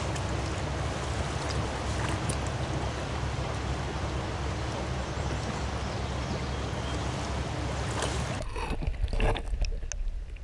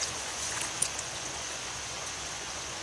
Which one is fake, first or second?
second